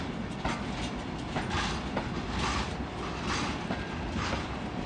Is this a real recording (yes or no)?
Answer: yes